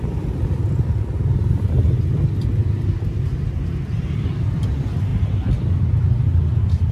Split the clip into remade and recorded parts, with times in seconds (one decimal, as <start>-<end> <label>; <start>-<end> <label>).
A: 0.0-6.9 recorded